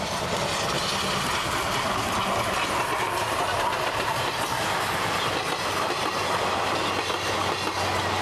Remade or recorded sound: recorded